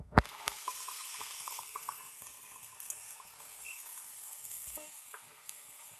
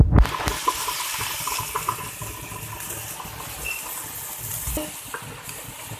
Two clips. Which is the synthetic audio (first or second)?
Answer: first